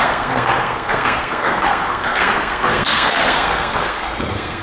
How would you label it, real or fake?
fake